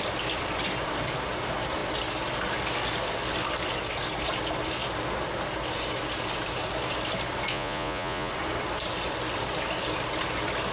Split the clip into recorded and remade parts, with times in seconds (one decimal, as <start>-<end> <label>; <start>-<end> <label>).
0.0-7.5 recorded; 7.5-8.3 remade; 8.3-10.7 recorded